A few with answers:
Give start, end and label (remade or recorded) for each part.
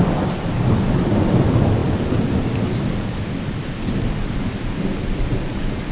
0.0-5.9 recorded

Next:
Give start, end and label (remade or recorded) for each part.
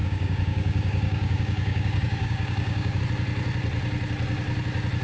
0.0-3.0 remade; 3.0-5.0 recorded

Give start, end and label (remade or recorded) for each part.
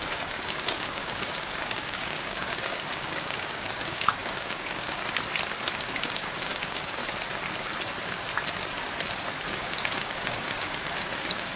0.0-5.0 remade; 5.0-5.8 recorded; 5.8-7.0 remade; 7.0-9.5 recorded; 9.5-11.6 remade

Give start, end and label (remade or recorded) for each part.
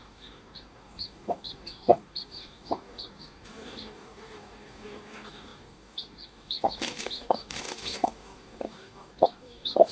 0.0-9.9 remade